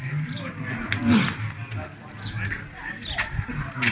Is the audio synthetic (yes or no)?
no